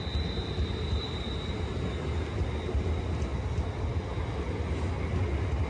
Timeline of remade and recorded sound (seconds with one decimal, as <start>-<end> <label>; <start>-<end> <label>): 0.0-5.7 recorded